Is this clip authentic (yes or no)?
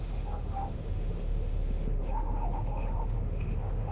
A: no